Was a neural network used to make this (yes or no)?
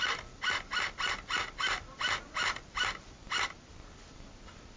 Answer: no